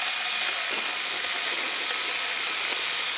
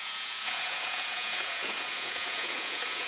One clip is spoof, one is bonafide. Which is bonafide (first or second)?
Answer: first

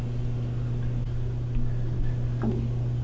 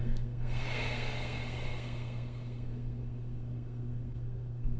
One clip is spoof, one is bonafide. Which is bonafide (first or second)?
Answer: first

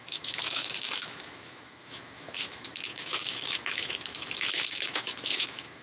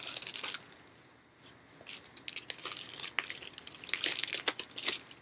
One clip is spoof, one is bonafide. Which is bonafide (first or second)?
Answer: second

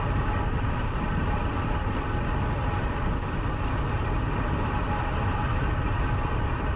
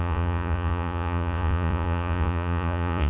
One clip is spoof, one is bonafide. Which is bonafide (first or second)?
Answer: first